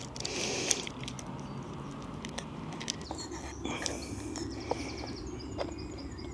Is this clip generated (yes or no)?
no